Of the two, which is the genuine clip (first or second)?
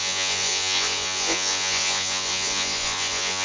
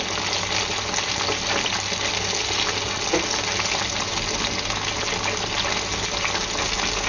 second